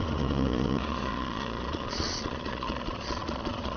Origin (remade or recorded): remade